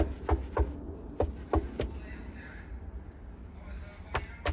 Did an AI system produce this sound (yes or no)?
no